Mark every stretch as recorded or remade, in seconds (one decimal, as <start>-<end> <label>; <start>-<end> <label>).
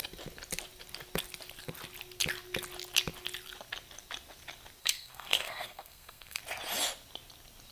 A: 0.0-4.8 recorded; 4.8-6.4 remade; 6.4-7.7 recorded